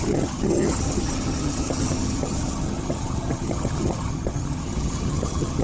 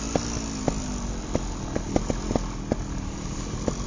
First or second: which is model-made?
first